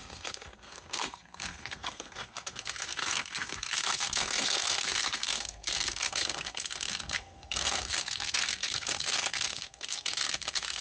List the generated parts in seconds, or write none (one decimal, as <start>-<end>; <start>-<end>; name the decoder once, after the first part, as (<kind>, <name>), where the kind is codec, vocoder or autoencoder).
0.0-10.8 (codec, SNAC)